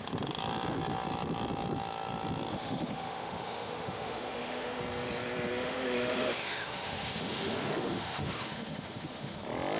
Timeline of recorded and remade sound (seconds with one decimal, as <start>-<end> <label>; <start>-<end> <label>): 0.0-2.5 recorded; 2.5-4.8 remade; 4.8-5.5 recorded; 5.5-9.4 remade; 9.4-9.8 recorded